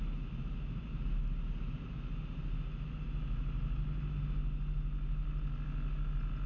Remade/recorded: recorded